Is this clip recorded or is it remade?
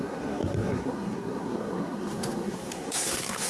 remade